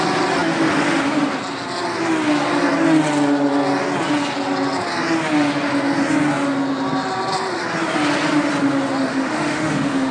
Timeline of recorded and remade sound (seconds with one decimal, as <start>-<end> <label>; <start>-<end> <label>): 0.0-9.1 recorded; 9.1-10.1 remade